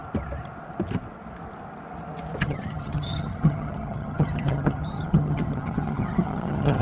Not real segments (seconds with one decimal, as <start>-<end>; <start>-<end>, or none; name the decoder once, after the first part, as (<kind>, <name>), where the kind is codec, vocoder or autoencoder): 2.4-6.8 (vocoder, HiFi-GAN)